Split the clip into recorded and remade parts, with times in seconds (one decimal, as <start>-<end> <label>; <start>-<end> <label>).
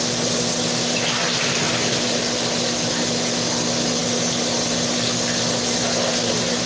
0.0-6.7 recorded